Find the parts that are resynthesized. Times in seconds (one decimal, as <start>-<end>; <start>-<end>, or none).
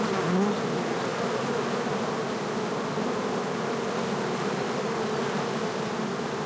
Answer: none